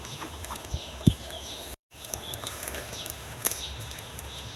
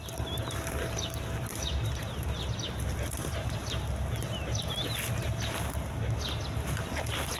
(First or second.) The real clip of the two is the second